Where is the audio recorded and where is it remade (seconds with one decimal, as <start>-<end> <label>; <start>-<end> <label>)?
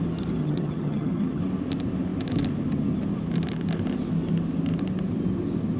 0.0-0.4 recorded; 0.4-1.4 remade; 1.4-5.8 recorded